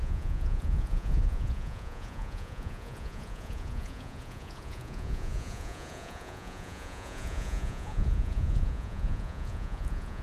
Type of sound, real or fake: fake